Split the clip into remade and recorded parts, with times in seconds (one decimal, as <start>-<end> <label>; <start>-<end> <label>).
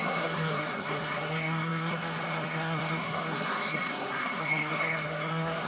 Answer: 0.0-5.7 remade